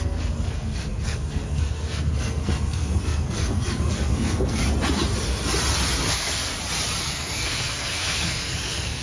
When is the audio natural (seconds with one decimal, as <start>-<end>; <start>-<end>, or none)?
4.6-6.1; 6.5-7.0